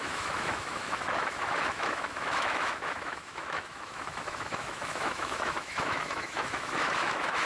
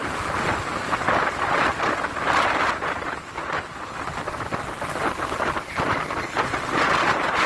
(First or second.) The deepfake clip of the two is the first